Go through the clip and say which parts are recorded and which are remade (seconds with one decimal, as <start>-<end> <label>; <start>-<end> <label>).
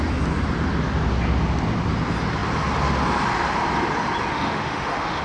0.0-4.3 recorded; 4.3-5.2 remade